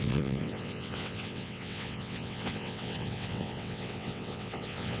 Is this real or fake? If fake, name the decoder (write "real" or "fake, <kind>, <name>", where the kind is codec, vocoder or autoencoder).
fake, vocoder, WaveNeXt